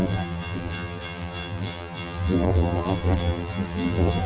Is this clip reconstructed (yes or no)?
yes